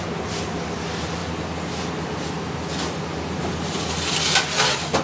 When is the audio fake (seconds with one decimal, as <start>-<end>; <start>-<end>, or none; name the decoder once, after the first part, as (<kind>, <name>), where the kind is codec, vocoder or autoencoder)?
none